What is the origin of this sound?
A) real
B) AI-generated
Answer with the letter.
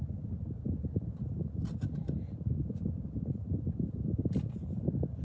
A